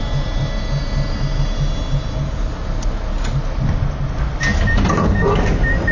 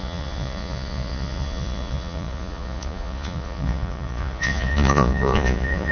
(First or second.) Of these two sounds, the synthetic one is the second